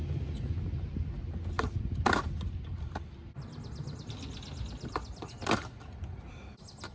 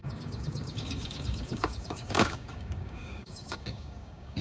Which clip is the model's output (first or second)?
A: second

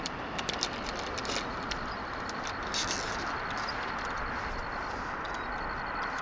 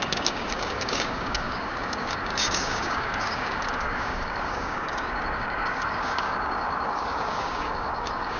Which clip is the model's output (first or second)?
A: second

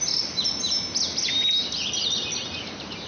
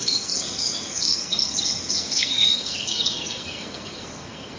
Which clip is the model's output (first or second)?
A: second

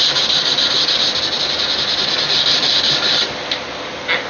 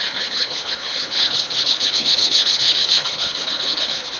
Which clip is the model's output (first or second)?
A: second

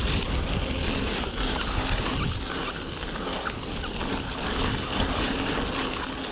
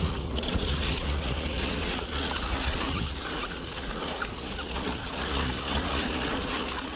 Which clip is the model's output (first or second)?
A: second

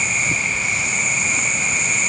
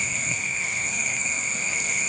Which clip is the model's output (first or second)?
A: second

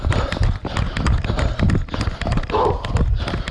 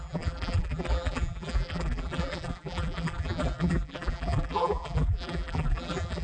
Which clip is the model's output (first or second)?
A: second